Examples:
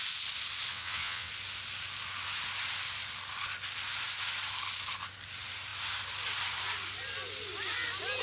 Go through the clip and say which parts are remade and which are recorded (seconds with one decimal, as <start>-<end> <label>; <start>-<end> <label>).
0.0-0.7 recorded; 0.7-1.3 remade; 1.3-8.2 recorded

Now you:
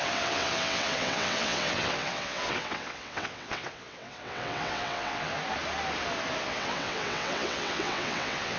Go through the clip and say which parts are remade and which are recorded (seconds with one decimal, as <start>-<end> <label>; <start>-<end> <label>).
0.0-5.3 remade; 5.3-6.4 recorded; 6.4-8.6 remade

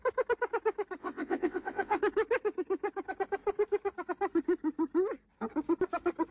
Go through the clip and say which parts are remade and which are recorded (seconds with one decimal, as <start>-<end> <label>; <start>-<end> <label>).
0.0-1.0 recorded; 1.0-2.0 remade; 2.0-6.3 recorded